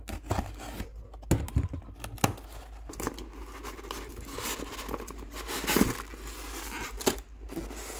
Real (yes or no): yes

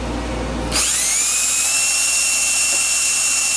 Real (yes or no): yes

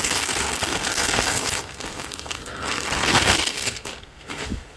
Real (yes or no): no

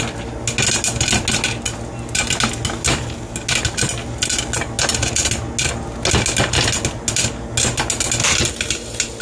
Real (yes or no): yes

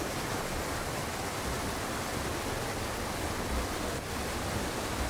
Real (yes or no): yes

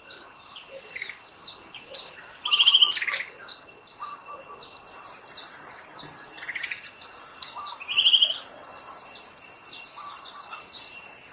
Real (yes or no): yes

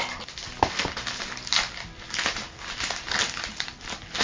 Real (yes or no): yes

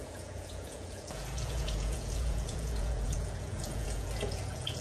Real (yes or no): no